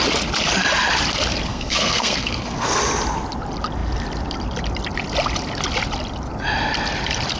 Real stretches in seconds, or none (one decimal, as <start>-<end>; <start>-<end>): 0.0-1.5; 2.8-7.4